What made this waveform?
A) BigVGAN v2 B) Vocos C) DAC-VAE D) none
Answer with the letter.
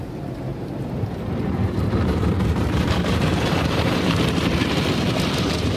A